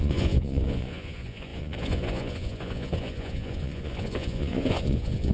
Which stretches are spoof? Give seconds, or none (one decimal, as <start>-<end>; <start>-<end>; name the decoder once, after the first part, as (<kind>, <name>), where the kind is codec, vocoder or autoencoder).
0.0-5.3 (vocoder, Vocos)